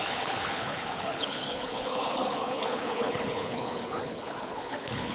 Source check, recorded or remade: remade